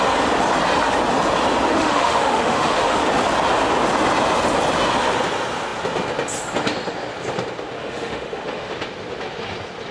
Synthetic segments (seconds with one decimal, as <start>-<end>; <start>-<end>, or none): 1.7-3.0; 7.8-8.7